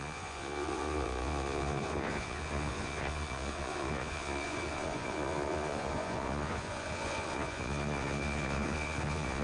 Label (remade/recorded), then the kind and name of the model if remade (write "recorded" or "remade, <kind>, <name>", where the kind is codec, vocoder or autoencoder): remade, vocoder, Vocos